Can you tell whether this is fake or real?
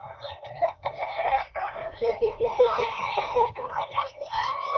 fake